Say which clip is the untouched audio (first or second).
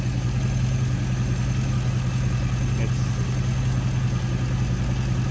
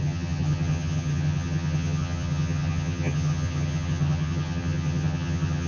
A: first